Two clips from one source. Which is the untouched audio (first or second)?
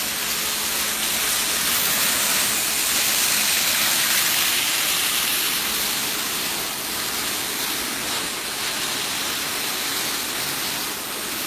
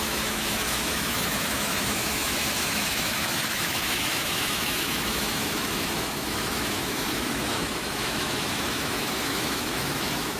first